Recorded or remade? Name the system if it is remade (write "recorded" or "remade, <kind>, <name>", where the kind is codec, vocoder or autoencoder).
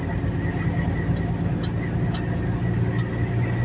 recorded